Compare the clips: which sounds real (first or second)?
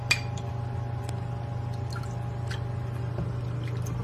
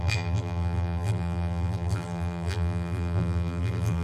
first